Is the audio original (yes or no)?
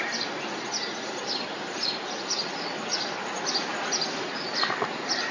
yes